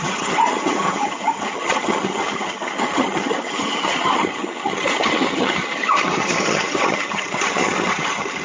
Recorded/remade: remade